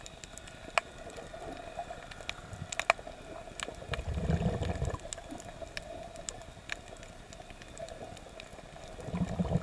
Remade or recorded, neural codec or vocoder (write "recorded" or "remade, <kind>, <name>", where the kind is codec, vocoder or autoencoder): recorded